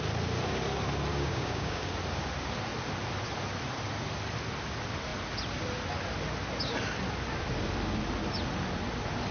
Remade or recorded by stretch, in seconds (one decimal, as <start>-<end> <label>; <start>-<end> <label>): 0.0-1.1 recorded; 1.1-1.9 remade; 1.9-9.3 recorded